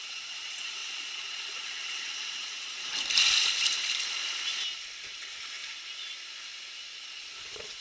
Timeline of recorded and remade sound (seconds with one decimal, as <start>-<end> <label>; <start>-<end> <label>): 0.0-2.9 remade; 2.9-5.1 recorded; 5.1-5.6 remade; 5.6-7.0 recorded; 7.0-7.8 remade

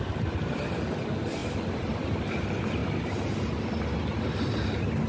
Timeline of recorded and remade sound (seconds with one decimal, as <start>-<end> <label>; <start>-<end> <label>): 0.0-5.1 recorded